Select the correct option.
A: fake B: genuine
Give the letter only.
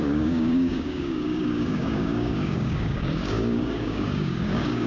A